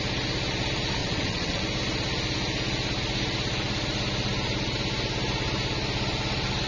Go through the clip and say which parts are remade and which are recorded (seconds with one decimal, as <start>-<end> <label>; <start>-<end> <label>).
0.0-1.0 recorded; 1.0-1.6 remade; 1.6-6.7 recorded